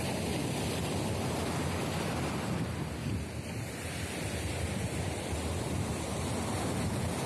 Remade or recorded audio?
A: recorded